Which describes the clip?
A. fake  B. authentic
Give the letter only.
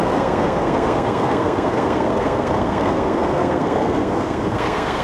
A